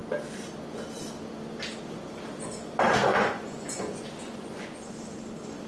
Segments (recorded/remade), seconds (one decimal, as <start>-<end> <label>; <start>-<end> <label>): 0.0-3.1 recorded; 3.1-4.9 remade; 4.9-5.7 recorded